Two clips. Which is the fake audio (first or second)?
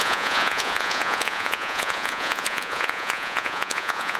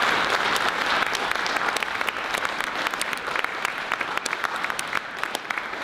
first